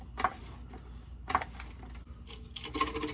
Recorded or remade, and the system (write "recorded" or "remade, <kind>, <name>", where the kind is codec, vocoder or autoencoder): recorded